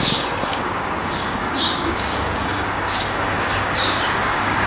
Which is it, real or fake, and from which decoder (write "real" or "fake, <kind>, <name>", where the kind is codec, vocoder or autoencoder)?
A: fake, codec, DAC